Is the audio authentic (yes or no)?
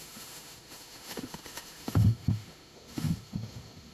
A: no